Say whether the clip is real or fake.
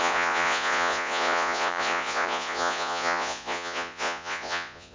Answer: fake